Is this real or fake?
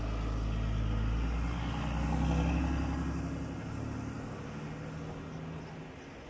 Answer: real